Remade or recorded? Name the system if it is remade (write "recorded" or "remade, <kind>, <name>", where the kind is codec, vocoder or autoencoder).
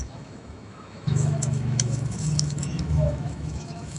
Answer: remade, autoencoder, DAC-VAE